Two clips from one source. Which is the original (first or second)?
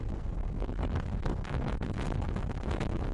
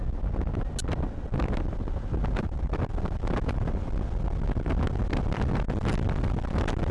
second